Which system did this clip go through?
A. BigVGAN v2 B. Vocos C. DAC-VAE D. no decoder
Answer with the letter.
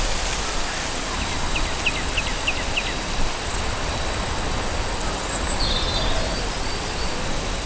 D